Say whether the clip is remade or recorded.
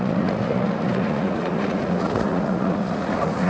remade